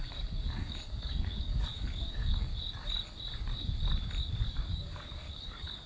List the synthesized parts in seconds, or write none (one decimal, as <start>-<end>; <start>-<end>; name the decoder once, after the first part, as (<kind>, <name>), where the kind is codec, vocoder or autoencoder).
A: 0.0-2.5 (codec, DAC); 4.3-5.9